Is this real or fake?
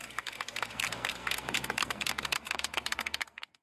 fake